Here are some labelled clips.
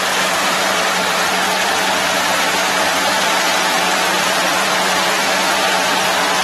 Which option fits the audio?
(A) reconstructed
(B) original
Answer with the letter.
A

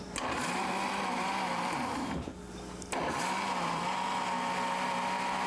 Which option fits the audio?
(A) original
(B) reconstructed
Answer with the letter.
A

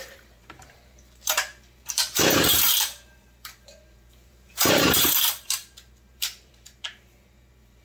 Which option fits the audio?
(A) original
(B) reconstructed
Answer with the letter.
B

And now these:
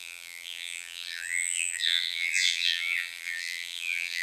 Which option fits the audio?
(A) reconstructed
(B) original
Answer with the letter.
A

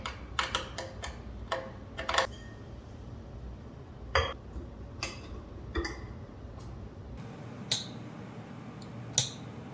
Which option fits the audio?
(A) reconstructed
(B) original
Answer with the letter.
B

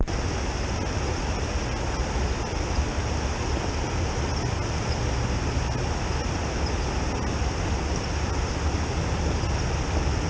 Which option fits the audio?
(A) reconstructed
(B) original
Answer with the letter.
B